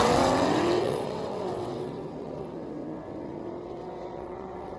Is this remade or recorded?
remade